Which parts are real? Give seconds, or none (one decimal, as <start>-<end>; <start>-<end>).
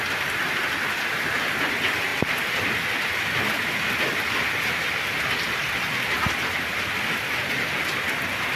0.0-8.6